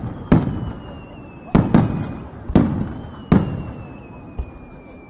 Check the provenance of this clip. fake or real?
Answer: real